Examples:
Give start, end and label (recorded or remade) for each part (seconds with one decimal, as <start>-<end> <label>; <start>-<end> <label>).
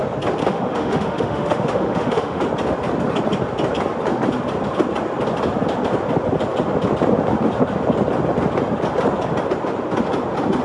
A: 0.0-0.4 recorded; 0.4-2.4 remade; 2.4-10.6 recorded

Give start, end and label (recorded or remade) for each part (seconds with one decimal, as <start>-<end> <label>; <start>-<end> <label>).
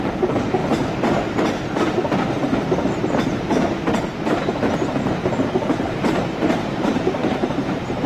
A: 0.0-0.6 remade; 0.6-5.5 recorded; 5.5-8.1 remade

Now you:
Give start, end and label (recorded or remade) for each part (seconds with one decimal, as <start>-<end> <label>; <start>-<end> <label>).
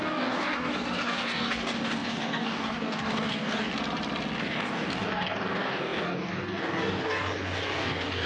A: 0.0-3.7 remade; 3.7-4.4 recorded; 4.4-8.3 remade